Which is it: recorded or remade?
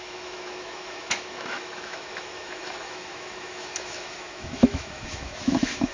remade